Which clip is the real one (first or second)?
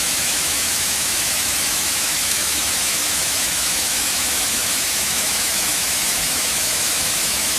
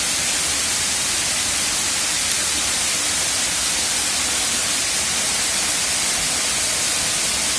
second